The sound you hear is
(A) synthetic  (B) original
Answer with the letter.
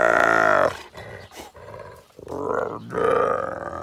B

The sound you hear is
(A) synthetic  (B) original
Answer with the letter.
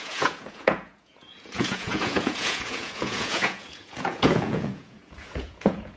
A